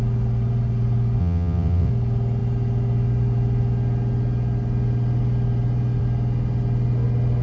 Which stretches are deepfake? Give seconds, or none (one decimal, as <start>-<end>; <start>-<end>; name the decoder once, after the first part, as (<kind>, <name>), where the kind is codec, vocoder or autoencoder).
1.2-1.9 (vocoder, WaveNeXt)

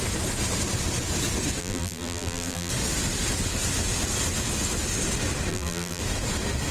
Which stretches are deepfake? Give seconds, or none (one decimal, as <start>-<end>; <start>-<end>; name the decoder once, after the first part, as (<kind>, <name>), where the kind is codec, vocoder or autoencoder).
1.6-2.7 (vocoder, BigVGAN v2); 5.5-6.0

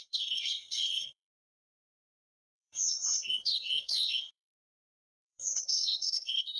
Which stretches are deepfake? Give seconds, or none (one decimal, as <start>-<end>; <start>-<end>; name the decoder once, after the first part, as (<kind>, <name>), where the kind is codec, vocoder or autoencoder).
0.0-6.6 (codec, SNAC)

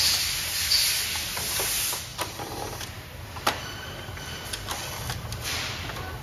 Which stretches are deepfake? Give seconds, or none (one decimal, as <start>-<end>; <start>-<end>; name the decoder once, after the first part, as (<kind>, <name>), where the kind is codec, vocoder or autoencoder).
2.1-4.0 (vocoder, BigVGAN v2)

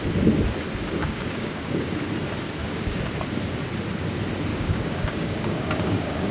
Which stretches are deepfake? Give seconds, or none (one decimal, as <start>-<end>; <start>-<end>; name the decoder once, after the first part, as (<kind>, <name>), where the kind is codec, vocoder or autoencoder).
1.0-2.0 (codec, DAC); 2.6-3.1; 4.5-6.3

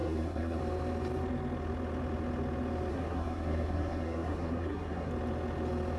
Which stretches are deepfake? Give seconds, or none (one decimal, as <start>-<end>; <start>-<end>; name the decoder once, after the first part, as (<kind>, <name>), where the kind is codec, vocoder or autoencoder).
0.0-0.6 (codec, SNAC); 2.9-5.1

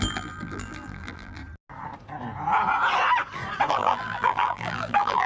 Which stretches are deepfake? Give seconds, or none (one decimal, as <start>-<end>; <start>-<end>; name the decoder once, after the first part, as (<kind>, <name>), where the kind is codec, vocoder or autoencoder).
0.0-1.4 (vocoder, BigVGAN v2); 3.7-5.3

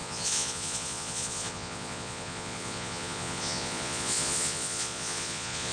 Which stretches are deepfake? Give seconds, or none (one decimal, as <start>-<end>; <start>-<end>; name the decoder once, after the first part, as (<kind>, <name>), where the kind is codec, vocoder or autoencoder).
0.0-5.7 (vocoder, Vocos)